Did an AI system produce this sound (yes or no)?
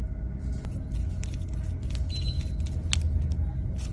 no